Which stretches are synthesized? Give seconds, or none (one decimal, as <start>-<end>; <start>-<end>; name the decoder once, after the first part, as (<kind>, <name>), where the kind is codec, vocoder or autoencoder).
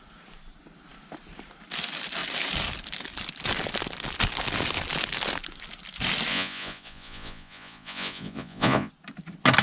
6.3-8.9 (vocoder, Vocos)